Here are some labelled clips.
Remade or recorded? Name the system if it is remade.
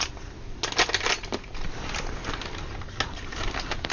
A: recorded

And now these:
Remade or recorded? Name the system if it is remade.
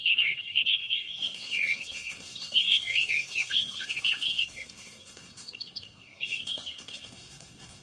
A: remade, codec, SNAC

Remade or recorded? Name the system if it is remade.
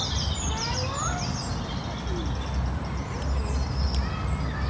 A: recorded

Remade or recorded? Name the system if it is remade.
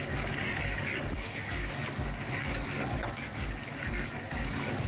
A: remade, codec, DAC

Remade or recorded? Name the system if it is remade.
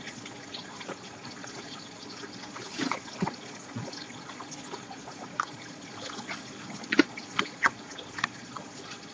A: remade, vocoder, Vocos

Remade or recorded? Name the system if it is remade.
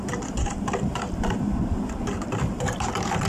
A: recorded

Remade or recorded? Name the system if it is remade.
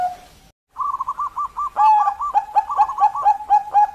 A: recorded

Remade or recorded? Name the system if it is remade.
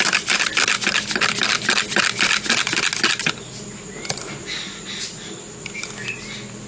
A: recorded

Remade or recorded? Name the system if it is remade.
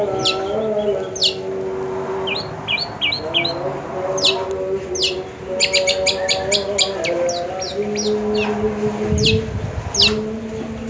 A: recorded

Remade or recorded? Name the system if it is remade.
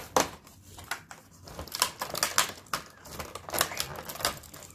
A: recorded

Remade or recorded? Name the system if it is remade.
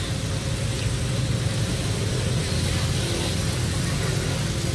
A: recorded